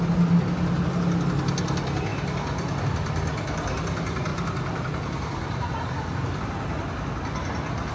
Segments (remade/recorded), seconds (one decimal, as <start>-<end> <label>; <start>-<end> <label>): 0.0-4.3 recorded; 4.3-6.4 remade; 6.4-7.9 recorded